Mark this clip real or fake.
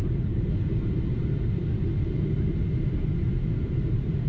fake